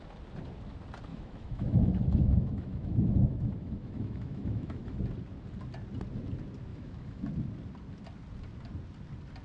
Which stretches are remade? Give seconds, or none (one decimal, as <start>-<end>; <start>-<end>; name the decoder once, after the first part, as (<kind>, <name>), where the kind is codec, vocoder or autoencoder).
1.1-5.0 (autoencoder, DAC-VAE); 6.7-7.3